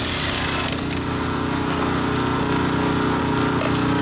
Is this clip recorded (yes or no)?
yes